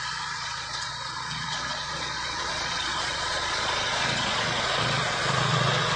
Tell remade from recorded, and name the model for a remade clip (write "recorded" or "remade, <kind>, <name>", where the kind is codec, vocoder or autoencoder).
remade, vocoder, Vocos